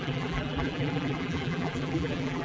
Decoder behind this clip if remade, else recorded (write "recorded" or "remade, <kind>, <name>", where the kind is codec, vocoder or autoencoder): remade, vocoder, BigVGAN v2